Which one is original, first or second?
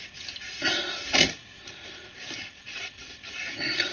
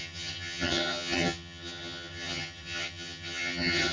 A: first